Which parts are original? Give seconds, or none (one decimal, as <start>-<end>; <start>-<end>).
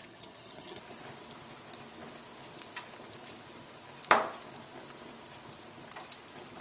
0.8-6.6